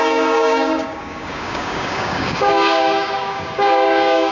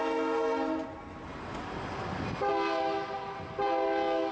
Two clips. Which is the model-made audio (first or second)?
first